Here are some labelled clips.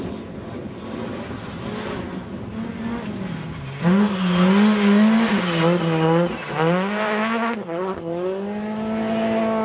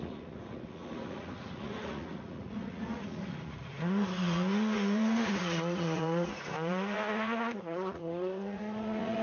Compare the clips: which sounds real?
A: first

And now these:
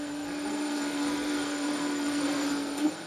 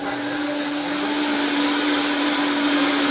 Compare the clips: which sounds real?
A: second